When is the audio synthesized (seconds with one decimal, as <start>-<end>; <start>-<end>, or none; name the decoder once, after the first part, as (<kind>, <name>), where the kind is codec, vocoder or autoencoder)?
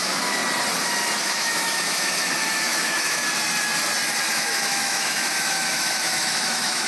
0.0-0.4 (autoencoder, DAC-VAE); 1.2-3.2; 4.2-6.9